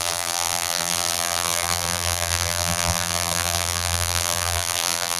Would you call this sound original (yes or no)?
no